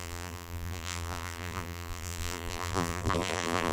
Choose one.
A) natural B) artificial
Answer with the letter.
B